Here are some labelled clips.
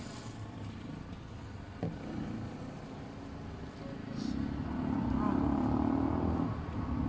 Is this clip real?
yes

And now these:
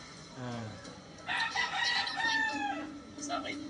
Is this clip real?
no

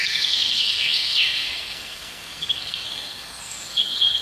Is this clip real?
no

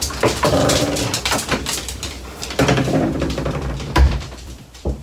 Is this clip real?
no